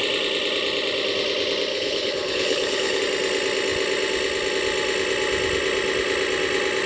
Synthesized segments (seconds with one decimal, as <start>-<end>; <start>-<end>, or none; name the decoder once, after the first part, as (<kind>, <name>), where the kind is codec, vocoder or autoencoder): 1.7-3.0 (codec, HILCodec)